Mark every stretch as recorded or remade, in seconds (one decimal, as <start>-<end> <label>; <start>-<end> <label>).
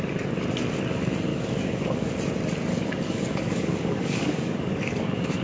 0.0-1.3 recorded; 1.3-2.1 remade; 2.1-2.7 recorded; 2.7-5.4 remade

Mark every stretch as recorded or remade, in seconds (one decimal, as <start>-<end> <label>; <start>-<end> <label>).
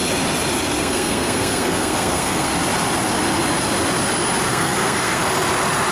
0.0-0.8 recorded; 0.8-2.5 remade; 2.5-4.5 recorded; 4.5-5.2 remade; 5.2-5.9 recorded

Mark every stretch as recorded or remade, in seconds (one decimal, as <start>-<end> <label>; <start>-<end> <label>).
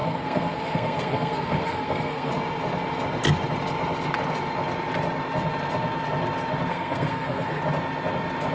0.0-2.3 remade; 2.3-6.7 recorded; 6.7-7.6 remade; 7.6-8.5 recorded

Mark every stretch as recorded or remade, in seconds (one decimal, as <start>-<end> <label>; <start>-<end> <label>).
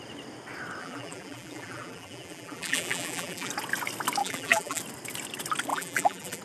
0.0-0.8 recorded; 0.8-3.5 remade; 3.5-4.2 recorded; 4.2-4.8 remade; 4.8-5.7 recorded; 5.7-6.4 remade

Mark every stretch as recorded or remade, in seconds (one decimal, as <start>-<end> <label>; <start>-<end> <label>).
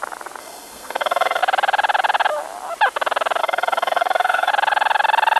0.0-0.4 recorded; 0.4-1.4 remade; 1.4-3.4 recorded; 3.4-4.5 remade; 4.5-5.4 recorded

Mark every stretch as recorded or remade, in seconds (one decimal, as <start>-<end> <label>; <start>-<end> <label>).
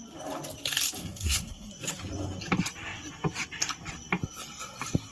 0.0-1.0 recorded; 1.0-1.7 remade; 1.7-5.1 recorded